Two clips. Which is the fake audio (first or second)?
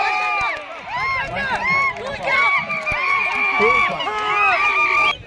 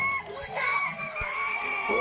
second